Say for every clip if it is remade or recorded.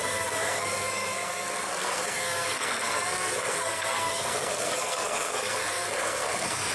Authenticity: remade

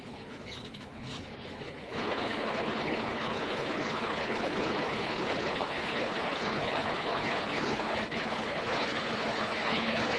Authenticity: remade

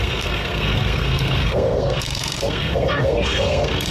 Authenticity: remade